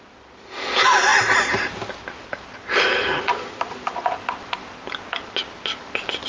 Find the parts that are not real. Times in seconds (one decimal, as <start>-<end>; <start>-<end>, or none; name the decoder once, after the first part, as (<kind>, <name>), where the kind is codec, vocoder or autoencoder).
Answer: none